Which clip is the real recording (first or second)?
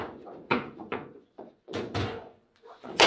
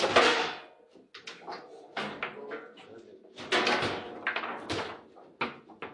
second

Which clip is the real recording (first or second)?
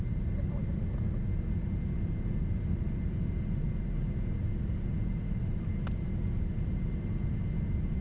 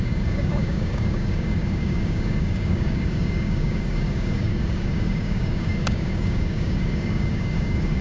first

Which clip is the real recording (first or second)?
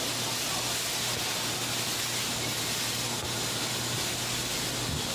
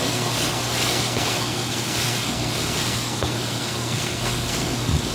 first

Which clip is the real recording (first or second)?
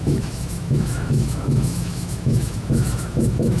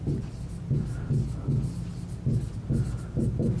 second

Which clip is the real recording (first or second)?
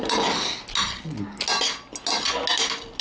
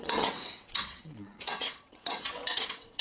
first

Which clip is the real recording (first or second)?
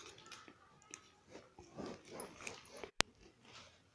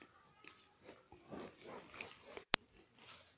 first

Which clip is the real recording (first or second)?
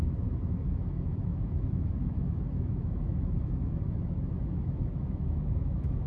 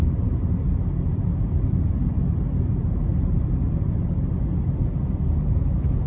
second